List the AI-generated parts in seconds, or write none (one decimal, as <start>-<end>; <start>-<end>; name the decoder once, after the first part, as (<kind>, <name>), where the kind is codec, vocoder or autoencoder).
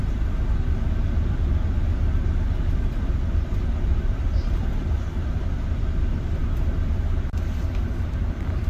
2.6-6.4 (vocoder, BigVGAN v2); 8.2-8.7